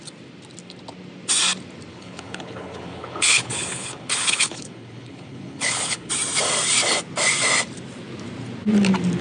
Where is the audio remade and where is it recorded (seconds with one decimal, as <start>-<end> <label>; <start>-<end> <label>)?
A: 0.0-1.9 recorded; 1.9-6.1 remade; 6.1-9.2 recorded